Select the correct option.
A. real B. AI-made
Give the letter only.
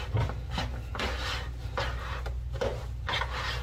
A